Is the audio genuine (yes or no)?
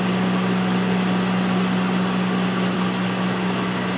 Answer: yes